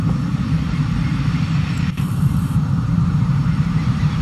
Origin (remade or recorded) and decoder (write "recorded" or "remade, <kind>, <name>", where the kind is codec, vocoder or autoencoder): remade, vocoder, BigVGAN v2